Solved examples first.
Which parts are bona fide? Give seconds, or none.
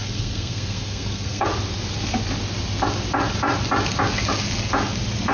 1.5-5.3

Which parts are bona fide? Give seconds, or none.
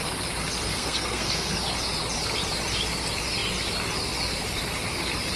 0.0-0.7; 1.5-5.4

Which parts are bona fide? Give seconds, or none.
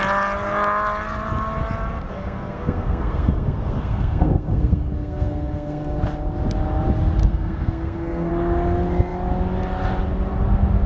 0.0-2.1; 6.0-7.2; 8.3-10.9